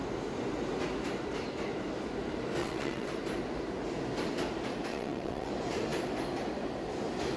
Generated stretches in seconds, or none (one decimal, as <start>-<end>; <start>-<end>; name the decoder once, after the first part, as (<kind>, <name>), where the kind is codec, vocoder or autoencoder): 2.6-3.1 (vocoder, WaveNeXt); 4.9-5.5